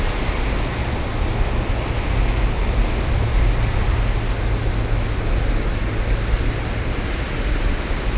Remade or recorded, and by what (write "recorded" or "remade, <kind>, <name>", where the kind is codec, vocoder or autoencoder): recorded